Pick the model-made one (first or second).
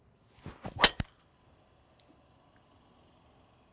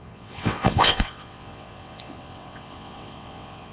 second